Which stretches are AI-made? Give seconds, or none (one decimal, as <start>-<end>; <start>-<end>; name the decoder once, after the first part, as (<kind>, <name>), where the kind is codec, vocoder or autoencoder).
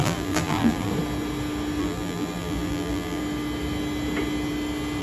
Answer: 0.0-0.9 (vocoder, BigVGAN v2); 1.8-3.2